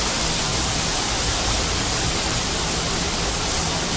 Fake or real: real